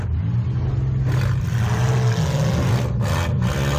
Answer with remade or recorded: recorded